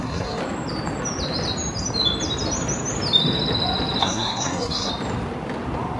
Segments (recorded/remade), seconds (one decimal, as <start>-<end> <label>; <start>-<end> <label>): 0.0-0.4 remade; 0.4-4.0 recorded; 4.0-4.9 remade; 4.9-6.0 recorded